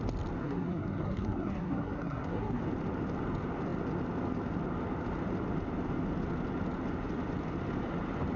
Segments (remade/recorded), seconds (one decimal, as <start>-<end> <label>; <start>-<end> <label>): 0.0-0.4 recorded; 0.4-2.6 remade; 2.6-8.4 recorded